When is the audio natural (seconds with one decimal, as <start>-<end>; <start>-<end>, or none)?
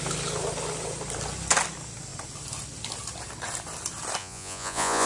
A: 0.0-4.2